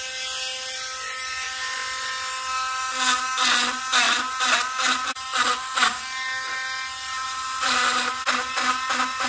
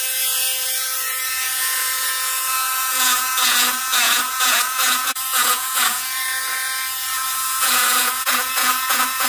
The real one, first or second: first